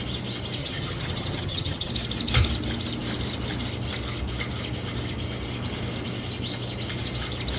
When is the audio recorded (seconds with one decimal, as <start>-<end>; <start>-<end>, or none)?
0.0-0.6; 1.9-7.6